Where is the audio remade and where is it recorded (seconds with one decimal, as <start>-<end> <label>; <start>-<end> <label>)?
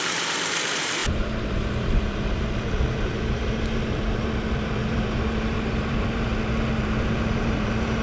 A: 0.0-6.3 remade; 6.3-6.8 recorded; 6.8-8.0 remade